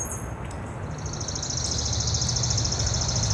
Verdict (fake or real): real